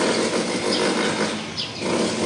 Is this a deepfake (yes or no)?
no